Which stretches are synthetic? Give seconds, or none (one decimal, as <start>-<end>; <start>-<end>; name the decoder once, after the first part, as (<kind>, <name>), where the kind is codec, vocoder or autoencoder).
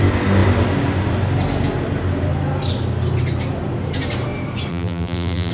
4.7-5.5 (vocoder, BigVGAN v2)